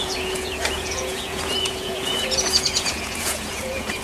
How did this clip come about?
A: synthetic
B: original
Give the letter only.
A